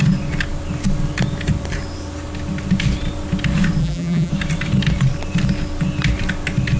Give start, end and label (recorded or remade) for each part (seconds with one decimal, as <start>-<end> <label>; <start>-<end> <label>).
0.0-3.8 recorded; 3.8-4.3 remade; 4.3-6.8 recorded